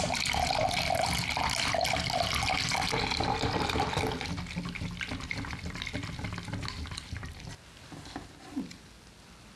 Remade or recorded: recorded